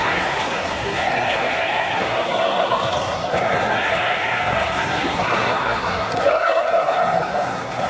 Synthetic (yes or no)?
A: yes